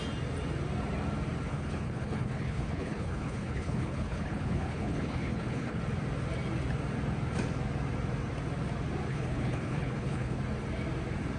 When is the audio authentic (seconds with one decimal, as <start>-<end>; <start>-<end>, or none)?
0.0-1.5; 5.8-9.1; 10.4-11.4

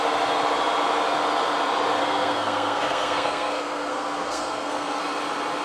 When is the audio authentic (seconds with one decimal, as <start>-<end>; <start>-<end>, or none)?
0.0-2.0; 5.0-5.6

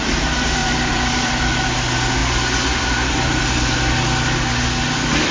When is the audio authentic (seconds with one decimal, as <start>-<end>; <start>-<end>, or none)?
0.0-0.6; 1.3-5.3

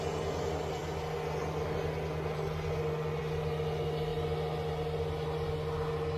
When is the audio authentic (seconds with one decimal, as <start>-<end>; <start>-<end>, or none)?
0.0-6.2

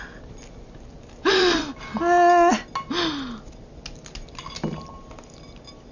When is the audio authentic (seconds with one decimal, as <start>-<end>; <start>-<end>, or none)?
0.0-5.9

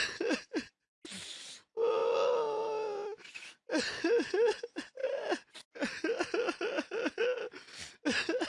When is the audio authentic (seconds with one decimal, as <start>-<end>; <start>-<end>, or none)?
0.0-8.5

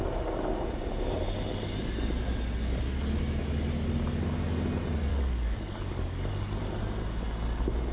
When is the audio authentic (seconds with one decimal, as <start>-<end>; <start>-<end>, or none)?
0.0-5.1; 6.3-7.9

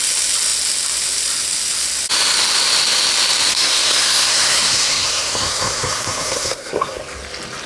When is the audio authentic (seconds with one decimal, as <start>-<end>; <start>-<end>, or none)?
0.0-3.5; 7.0-7.7